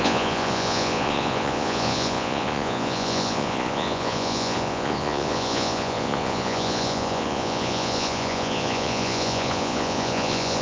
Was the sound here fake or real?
fake